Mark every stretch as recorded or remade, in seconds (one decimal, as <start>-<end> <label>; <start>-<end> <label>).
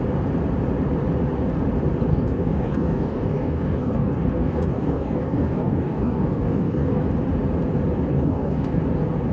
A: 0.0-2.1 recorded; 2.1-7.0 remade; 7.0-8.1 recorded; 8.1-8.8 remade; 8.8-9.3 recorded